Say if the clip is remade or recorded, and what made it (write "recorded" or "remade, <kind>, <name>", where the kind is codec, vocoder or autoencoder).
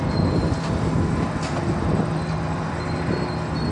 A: recorded